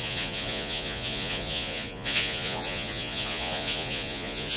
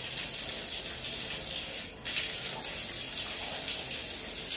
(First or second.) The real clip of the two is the second